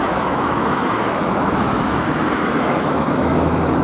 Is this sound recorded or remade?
remade